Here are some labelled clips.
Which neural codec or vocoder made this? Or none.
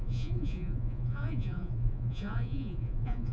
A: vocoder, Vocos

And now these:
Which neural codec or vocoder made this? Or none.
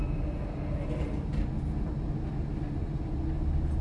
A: none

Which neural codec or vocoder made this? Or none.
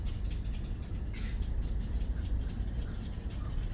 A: none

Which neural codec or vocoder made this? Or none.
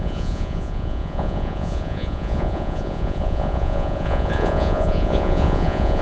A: vocoder, Vocos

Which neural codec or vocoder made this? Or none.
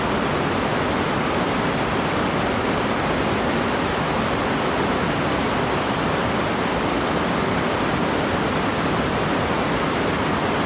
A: none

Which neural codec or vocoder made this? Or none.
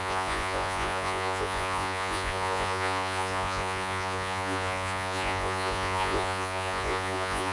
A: vocoder, Vocos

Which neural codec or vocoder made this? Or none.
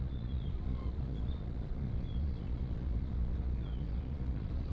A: vocoder, Vocos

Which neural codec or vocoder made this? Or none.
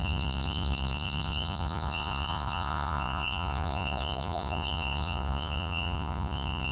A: vocoder, Vocos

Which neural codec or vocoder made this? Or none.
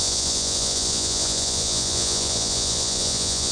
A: vocoder, Vocos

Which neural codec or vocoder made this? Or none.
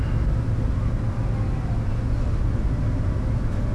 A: none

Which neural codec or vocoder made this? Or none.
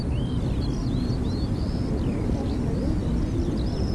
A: none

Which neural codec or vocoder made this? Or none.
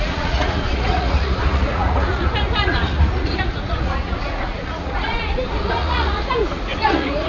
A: vocoder, Vocos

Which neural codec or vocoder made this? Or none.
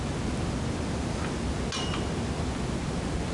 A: none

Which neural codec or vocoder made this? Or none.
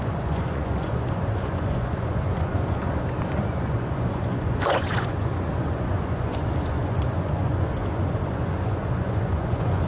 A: vocoder, Vocos